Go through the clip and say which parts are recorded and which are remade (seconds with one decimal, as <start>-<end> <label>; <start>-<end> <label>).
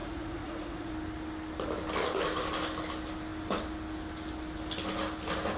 0.0-0.9 remade; 0.9-5.6 recorded